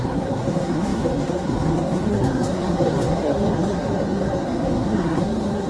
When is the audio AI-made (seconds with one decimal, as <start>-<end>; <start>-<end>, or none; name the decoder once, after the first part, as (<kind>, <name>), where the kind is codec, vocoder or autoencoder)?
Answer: 0.0-5.7 (codec, SNAC)